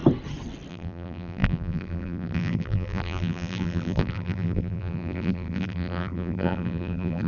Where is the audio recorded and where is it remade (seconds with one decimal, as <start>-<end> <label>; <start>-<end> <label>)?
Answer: 0.0-0.7 recorded; 0.7-7.3 remade